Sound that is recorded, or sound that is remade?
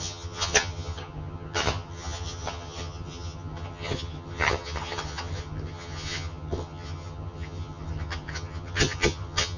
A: remade